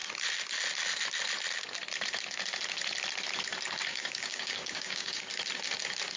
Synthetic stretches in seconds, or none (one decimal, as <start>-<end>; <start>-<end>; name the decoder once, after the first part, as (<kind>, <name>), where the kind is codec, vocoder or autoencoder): 3.9-5.2 (codec, DAC)